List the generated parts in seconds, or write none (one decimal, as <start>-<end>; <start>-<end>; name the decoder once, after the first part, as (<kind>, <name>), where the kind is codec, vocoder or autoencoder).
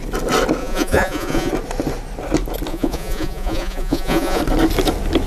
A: 0.6-1.5 (vocoder, Vocos); 2.7-4.4